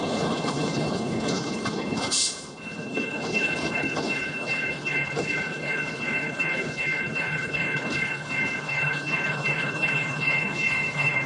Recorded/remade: remade